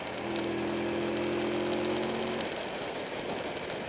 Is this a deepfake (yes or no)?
no